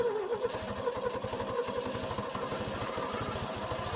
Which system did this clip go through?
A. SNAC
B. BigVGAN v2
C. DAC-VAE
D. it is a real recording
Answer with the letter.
D